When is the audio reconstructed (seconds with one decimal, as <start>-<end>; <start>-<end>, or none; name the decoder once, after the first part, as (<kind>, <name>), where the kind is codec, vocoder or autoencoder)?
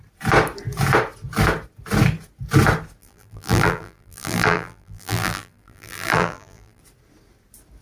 3.0-6.8 (vocoder, BigVGAN v2)